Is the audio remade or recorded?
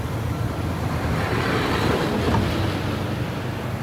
recorded